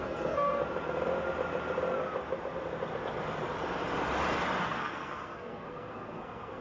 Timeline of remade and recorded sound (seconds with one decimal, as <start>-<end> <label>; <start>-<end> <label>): 0.0-0.6 remade; 0.6-4.6 recorded; 4.6-6.6 remade